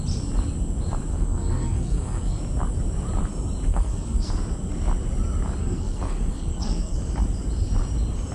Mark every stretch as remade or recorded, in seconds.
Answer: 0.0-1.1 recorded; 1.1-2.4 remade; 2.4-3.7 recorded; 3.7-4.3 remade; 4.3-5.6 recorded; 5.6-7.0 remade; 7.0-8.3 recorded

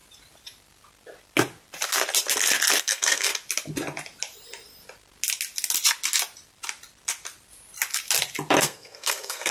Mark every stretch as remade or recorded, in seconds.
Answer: 0.0-2.8 recorded; 2.8-3.3 remade; 3.3-8.6 recorded; 8.6-9.5 remade

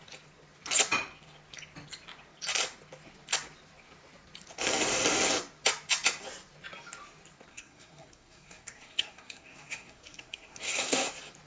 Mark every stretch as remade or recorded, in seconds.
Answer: 0.0-7.5 recorded; 7.5-11.1 remade; 11.1-11.5 recorded